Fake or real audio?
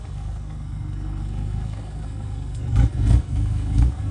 fake